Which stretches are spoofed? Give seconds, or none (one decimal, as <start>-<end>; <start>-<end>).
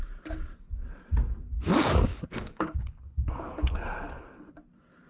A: 2.1-4.5